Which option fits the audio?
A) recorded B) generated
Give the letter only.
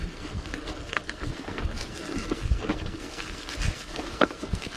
B